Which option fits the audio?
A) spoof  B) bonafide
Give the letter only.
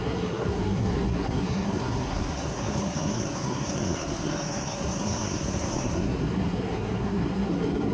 A